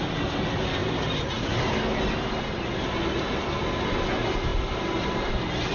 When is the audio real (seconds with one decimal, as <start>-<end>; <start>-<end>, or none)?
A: 0.0-5.7